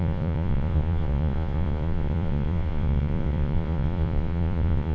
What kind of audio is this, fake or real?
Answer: fake